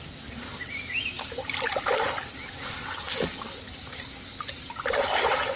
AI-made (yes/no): no